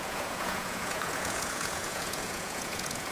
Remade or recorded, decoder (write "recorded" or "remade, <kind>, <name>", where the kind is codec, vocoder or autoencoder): remade, vocoder, Vocos